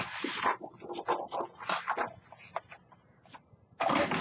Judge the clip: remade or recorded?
recorded